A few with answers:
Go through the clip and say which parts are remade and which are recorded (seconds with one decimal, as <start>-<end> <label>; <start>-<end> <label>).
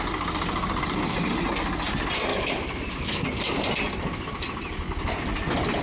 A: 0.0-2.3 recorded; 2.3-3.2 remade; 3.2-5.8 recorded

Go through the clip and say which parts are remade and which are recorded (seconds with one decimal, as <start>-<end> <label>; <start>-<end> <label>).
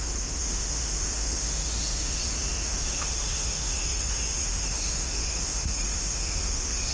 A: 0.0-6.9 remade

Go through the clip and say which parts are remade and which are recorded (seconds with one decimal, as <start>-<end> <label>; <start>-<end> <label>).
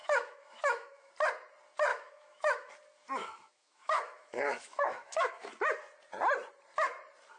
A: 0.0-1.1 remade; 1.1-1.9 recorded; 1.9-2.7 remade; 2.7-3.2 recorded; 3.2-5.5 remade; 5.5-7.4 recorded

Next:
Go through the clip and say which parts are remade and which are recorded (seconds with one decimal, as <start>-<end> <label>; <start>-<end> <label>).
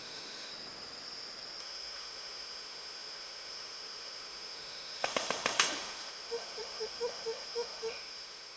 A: 0.0-0.5 remade; 0.5-1.6 recorded; 1.6-8.6 remade